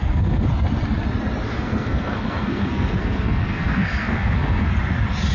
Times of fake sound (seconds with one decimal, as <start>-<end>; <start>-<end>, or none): 0.0-0.5; 1.5-4.7